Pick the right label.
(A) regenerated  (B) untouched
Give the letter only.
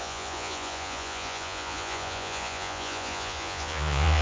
A